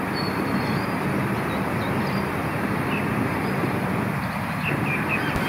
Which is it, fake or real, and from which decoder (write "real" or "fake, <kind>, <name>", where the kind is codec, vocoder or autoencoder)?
real